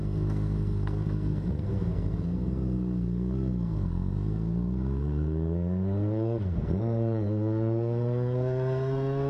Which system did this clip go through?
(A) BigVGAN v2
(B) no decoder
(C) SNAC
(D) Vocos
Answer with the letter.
C